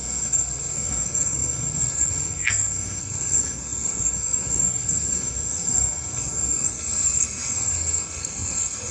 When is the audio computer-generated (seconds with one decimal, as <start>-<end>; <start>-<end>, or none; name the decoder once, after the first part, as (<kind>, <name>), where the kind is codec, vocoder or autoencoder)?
0.0-8.9 (codec, SNAC)